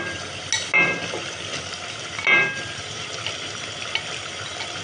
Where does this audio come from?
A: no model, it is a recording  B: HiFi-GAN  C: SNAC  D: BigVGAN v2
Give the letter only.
A